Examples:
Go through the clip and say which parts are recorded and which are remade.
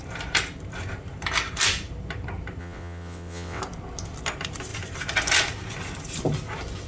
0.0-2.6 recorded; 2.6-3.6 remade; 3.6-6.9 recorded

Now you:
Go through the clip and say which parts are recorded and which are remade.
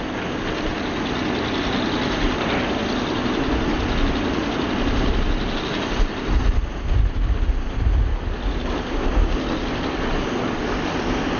0.0-11.4 recorded